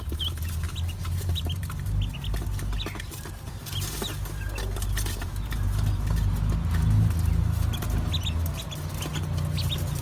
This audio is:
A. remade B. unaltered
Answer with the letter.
B